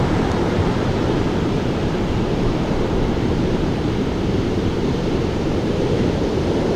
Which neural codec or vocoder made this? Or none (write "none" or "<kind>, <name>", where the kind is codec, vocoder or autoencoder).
vocoder, BigVGAN v2